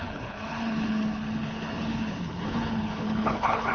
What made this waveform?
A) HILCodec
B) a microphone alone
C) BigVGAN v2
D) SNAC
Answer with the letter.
A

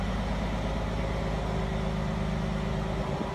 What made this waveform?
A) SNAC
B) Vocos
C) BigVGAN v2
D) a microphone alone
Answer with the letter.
D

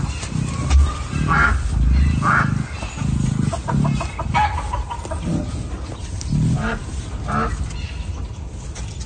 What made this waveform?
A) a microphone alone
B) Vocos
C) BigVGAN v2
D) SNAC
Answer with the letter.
A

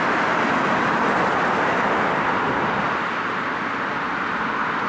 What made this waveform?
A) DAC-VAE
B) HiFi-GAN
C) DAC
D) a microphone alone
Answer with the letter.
D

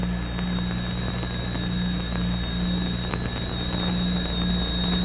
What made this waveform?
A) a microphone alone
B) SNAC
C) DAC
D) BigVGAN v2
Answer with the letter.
A